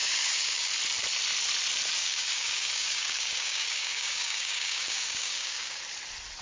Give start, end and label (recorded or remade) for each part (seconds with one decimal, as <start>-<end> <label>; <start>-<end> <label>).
0.0-0.7 remade; 0.7-2.0 recorded; 2.0-5.8 remade; 5.8-6.4 recorded